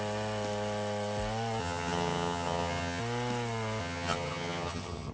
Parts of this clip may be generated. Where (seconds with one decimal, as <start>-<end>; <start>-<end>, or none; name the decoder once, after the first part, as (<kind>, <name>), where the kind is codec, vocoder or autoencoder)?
1.6-3.0 (vocoder, HiFi-GAN); 3.8-5.1